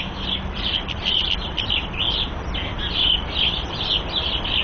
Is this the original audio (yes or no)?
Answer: yes